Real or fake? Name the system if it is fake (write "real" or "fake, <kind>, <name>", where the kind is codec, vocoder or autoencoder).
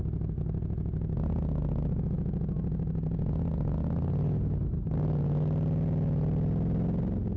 real